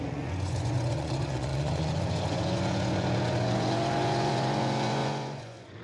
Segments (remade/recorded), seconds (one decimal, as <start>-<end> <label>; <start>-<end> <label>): 0.0-5.8 remade